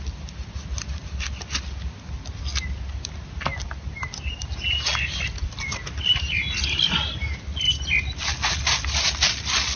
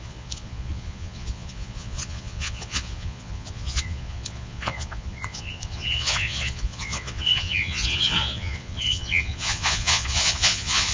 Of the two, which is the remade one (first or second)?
second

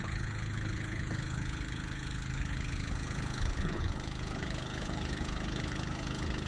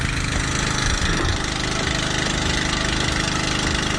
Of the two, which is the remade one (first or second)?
first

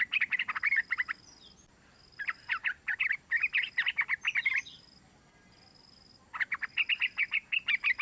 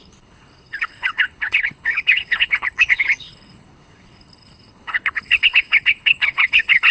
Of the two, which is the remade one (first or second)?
second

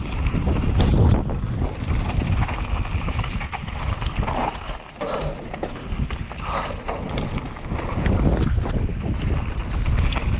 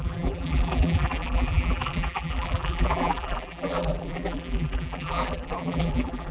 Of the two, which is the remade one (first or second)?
second